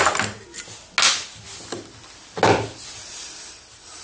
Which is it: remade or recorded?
recorded